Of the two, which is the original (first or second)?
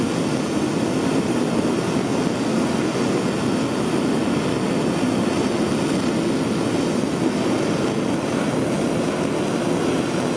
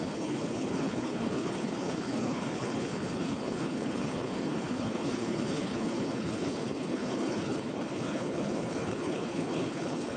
first